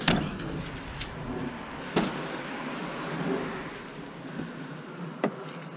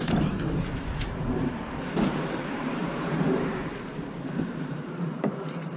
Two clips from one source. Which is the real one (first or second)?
first